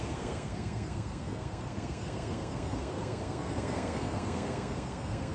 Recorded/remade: remade